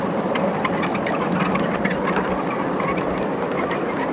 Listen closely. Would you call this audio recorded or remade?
recorded